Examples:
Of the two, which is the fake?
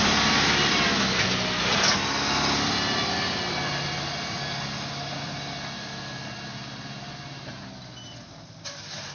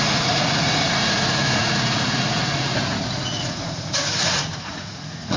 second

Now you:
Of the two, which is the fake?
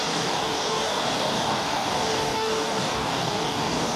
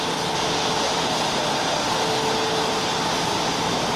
first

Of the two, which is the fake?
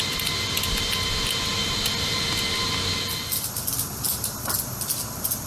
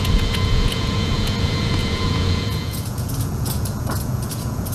second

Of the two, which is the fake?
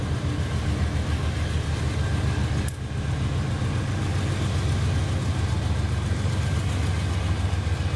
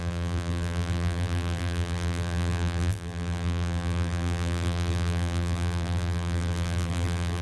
second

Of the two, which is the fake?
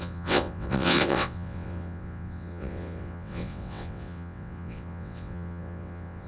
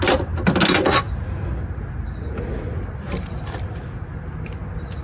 first